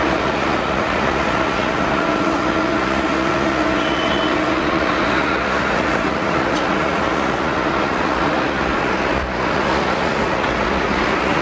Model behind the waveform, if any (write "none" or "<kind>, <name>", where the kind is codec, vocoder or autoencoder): vocoder, Vocos